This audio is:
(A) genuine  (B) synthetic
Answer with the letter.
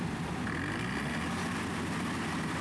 A